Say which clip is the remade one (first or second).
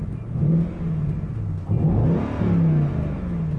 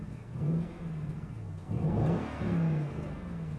second